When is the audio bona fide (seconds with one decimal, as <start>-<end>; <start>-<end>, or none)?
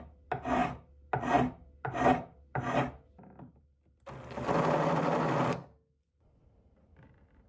0.0-7.5